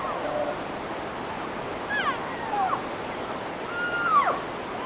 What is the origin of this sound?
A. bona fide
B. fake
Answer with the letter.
A